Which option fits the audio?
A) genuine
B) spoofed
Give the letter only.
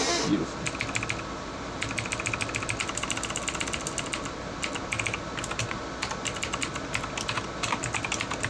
A